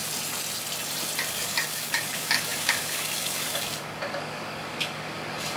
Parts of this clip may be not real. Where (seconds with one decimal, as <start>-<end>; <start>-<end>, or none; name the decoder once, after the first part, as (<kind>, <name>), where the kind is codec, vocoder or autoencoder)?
1.3-5.6 (codec, DAC)